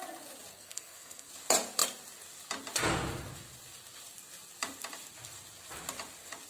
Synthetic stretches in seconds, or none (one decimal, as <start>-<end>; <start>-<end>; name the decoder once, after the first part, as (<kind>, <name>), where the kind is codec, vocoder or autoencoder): 0.5-1.3 (codec, SNAC)